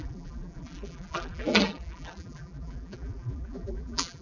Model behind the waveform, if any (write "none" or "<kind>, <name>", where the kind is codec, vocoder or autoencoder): vocoder, BigVGAN v2